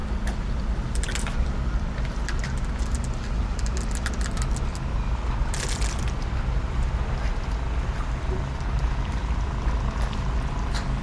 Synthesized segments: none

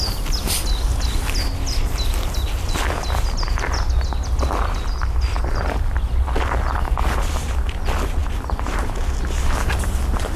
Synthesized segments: none

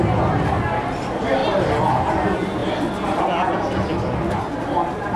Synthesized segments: none

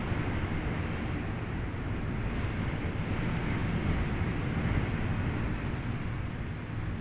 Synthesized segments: none

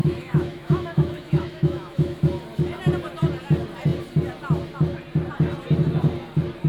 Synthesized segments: 0.0-2.2

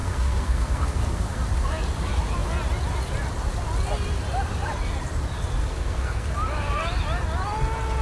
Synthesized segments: 0.0-1.4; 5.6-6.3